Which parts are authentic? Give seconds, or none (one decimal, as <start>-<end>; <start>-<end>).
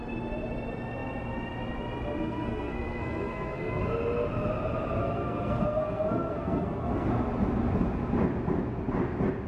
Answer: 0.0-2.2; 3.8-5.0; 7.1-9.5